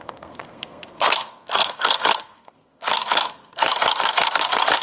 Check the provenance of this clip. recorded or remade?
remade